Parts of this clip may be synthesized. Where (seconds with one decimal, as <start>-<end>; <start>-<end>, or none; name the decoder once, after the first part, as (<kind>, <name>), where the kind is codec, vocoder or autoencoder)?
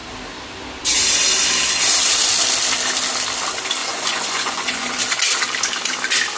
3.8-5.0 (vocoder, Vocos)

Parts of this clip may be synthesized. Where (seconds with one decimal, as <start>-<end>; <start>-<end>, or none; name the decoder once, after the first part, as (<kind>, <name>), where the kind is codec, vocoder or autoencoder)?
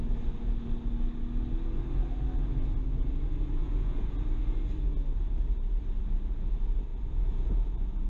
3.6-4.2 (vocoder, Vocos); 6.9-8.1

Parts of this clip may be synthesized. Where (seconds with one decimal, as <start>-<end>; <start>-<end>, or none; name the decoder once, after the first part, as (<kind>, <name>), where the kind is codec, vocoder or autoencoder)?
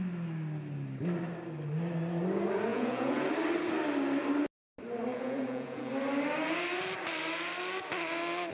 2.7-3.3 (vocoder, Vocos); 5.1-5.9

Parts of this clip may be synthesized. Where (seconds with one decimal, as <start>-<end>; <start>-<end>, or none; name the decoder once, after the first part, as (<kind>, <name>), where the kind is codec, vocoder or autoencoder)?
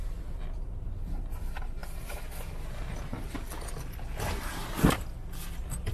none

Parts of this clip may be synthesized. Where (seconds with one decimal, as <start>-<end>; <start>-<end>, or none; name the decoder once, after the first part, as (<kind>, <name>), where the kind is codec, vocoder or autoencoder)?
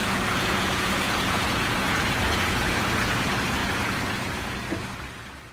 0.0-3.2 (vocoder, Vocos); 3.6-4.5